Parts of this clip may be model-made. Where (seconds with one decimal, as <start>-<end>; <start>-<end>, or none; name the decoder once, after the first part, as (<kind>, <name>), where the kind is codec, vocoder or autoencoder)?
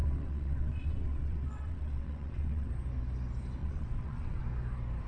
0.0-2.7 (vocoder, WaveNeXt); 3.6-4.4